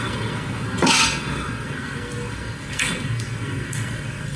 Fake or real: fake